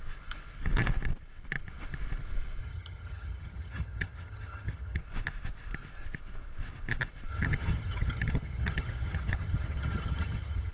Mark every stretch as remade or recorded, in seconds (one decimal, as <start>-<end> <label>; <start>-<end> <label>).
0.0-2.6 recorded; 2.6-5.0 remade; 5.0-7.3 recorded; 7.3-10.7 remade